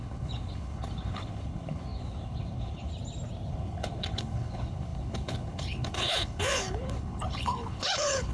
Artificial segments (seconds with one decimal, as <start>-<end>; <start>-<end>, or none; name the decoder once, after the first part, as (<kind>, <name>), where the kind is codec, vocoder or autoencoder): 0.0-2.9 (codec, HILCodec); 3.5-8.3